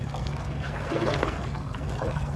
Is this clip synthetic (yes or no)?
yes